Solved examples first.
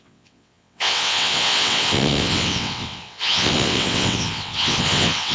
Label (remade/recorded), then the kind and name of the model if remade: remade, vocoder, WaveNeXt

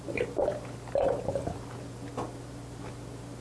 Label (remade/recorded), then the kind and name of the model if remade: recorded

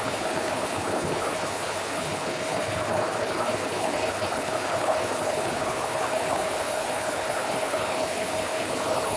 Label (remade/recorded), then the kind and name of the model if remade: remade, codec, HILCodec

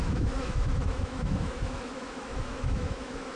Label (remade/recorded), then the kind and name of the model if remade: remade, autoencoder, DAC-VAE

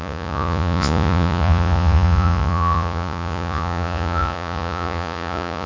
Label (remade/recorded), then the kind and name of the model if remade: remade, vocoder, Vocos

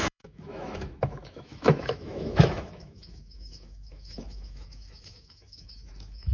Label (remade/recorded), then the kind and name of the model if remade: remade, autoencoder, DAC-VAE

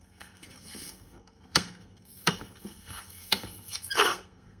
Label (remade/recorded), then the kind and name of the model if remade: remade, codec, SNAC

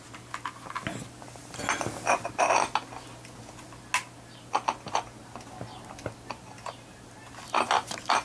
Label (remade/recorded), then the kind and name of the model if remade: recorded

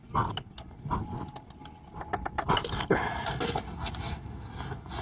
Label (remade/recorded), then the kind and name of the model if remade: recorded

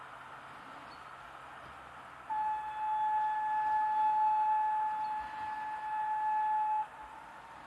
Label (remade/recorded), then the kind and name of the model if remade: recorded